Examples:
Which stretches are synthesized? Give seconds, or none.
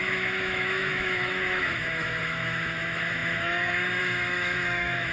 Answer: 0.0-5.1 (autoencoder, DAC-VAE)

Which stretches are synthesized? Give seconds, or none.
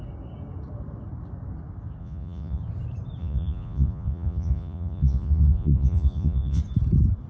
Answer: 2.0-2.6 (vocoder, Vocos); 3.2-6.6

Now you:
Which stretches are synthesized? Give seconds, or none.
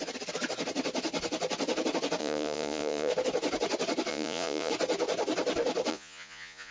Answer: 2.2-3.1 (vocoder, Vocos); 4.1-4.7; 5.9-6.7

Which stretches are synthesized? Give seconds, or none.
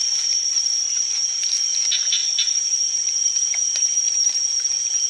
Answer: 0.0-1.1 (vocoder, BigVGAN v2); 2.2-4.4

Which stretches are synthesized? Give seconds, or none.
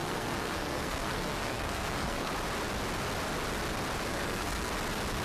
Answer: 0.0-2.3 (codec, SNAC); 4.1-4.7